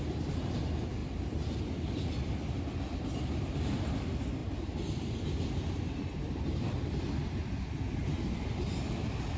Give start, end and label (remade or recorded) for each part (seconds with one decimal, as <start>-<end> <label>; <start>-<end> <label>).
0.0-9.4 recorded